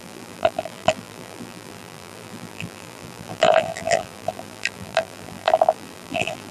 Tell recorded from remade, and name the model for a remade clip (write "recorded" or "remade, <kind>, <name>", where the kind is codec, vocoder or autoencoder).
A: remade, vocoder, BigVGAN v2